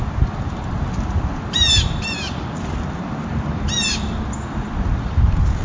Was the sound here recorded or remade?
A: recorded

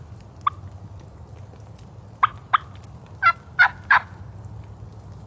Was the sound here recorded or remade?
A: recorded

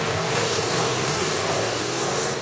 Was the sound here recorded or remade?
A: remade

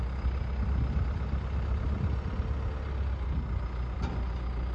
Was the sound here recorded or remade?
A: recorded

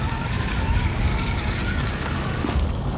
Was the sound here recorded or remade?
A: remade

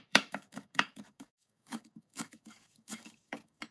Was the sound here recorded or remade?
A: remade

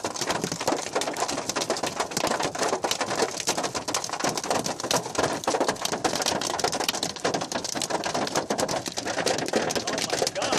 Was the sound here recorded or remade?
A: recorded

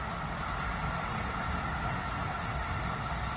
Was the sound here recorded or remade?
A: recorded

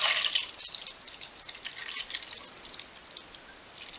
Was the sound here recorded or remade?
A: recorded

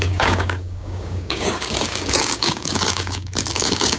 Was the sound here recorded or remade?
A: remade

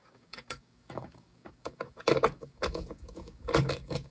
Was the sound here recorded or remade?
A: remade